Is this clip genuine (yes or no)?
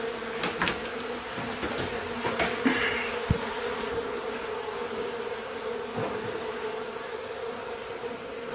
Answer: yes